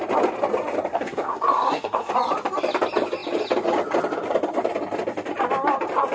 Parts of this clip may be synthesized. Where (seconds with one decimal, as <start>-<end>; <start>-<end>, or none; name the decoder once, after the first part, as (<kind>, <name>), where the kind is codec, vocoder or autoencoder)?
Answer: 0.9-2.1 (codec, SNAC)